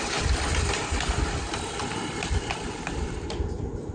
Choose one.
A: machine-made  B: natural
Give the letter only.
B